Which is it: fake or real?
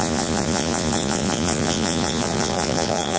fake